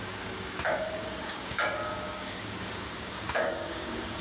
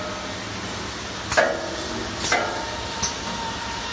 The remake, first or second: first